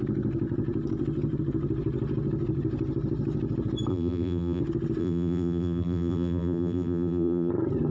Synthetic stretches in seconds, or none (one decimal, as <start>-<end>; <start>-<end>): 3.9-4.6; 5.0-7.5